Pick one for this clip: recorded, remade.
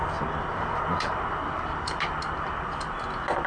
recorded